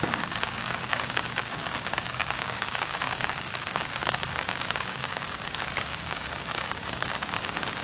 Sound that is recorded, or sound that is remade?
remade